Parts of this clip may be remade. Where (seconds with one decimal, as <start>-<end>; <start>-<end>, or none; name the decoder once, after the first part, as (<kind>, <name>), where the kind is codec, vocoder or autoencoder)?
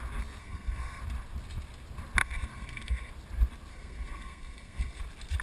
0.4-1.0 (codec, SNAC); 2.2-3.1; 3.7-5.0